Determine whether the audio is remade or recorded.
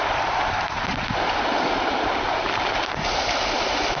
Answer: recorded